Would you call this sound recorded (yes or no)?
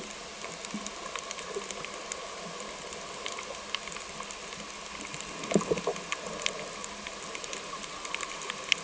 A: yes